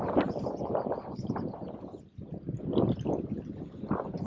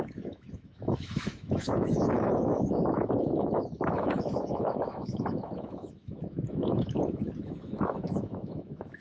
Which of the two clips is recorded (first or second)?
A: first